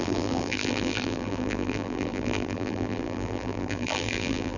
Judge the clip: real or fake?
fake